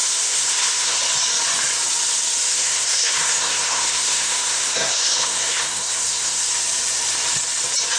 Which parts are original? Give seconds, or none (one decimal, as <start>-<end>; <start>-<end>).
1.0-2.5; 6.4-8.0

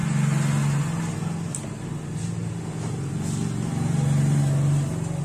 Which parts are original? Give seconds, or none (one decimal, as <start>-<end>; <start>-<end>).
0.0-5.2

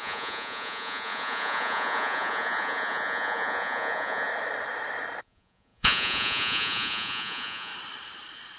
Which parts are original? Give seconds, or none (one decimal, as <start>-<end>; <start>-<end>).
4.3-5.2; 7.7-8.6

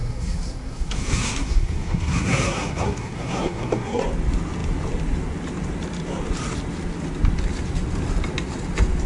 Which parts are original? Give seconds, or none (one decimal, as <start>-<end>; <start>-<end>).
4.0-9.1

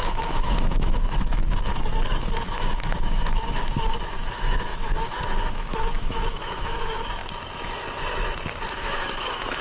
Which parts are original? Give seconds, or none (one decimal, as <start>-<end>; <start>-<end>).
1.7-2.2; 7.2-8.7

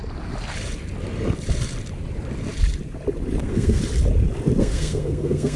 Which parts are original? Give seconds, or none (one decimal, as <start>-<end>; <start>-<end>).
0.0-3.4; 3.8-4.6

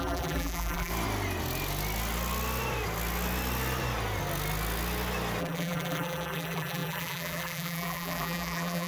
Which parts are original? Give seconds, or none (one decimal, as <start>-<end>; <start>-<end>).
0.9-5.4

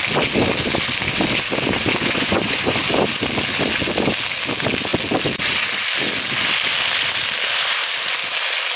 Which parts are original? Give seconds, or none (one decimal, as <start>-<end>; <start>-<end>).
0.0-2.0; 2.8-8.8